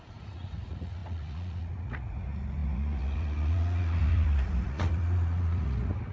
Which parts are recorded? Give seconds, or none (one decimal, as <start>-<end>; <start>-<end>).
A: none